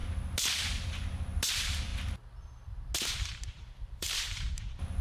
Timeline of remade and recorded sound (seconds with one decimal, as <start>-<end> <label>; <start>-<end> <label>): 0.0-1.5 recorded; 1.5-1.9 remade; 1.9-3.1 recorded; 3.1-5.0 remade